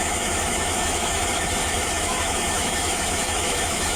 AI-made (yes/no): yes